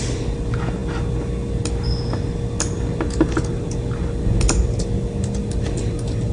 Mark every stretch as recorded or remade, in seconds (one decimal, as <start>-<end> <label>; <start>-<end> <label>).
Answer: 0.0-6.3 recorded